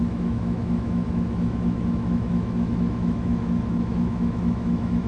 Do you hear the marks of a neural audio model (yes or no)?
yes